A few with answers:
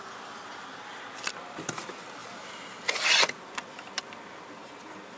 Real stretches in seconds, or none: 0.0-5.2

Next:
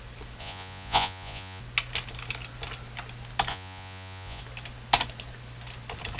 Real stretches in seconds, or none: 0.0-0.4; 1.6-3.5; 4.4-6.2

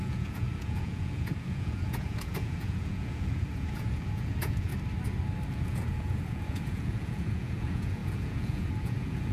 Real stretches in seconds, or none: 4.7-5.5